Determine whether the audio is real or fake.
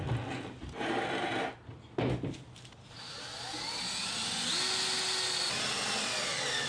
real